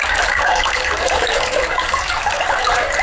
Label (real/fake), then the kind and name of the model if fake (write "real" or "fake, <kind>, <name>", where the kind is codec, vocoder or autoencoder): fake, codec, DAC